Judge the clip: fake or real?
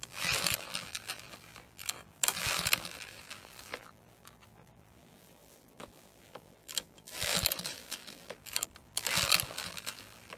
fake